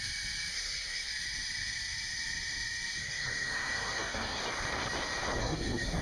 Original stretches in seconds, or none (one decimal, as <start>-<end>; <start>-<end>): 0.0-0.5; 1.1-3.0; 4.4-5.4